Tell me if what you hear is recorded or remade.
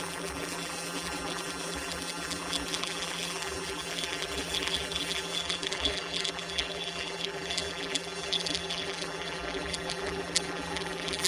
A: remade